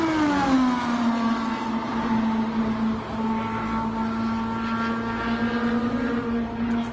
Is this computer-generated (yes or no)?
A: no